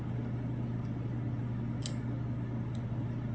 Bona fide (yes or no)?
yes